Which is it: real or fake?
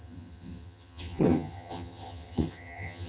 fake